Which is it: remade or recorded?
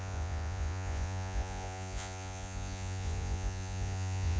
remade